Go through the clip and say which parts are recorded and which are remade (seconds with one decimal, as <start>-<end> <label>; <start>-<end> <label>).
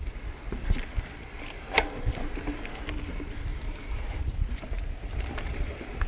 0.0-3.5 recorded; 3.5-4.2 remade; 4.2-6.1 recorded